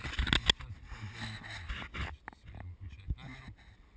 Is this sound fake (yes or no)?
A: no